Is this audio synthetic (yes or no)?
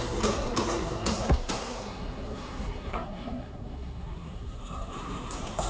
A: yes